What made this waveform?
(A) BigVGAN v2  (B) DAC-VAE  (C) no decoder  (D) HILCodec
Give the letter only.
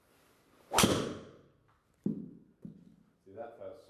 C